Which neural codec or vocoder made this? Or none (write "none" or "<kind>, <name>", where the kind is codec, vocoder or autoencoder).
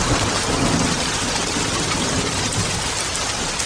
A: none